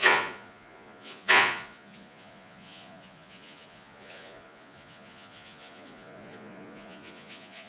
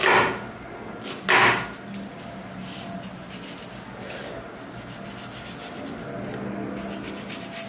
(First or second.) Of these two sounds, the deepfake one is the first